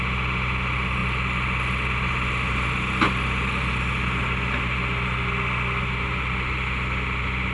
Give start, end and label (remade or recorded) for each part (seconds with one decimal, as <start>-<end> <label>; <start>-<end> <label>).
0.0-7.5 recorded